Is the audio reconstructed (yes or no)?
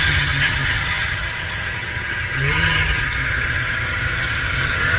yes